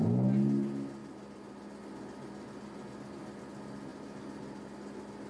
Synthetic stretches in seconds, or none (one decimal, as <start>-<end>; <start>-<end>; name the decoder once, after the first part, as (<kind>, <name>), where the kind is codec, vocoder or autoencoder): none